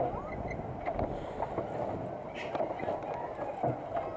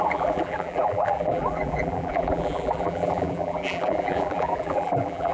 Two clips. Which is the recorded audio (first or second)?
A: first